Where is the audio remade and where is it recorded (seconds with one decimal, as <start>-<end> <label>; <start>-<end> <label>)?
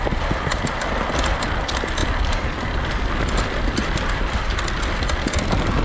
0.0-5.8 recorded